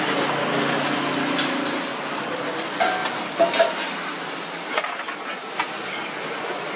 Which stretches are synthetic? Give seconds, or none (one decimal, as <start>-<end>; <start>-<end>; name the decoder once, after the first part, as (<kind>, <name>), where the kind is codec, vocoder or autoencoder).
1.9-2.4 (codec, DAC)